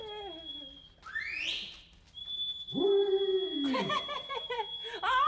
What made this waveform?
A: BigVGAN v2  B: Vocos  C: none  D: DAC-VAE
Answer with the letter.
C